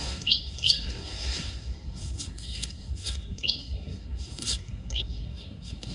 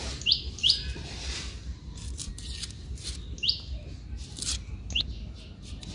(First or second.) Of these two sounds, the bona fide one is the second